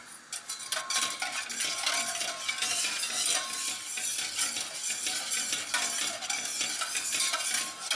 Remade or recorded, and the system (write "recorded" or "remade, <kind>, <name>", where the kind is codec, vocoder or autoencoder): recorded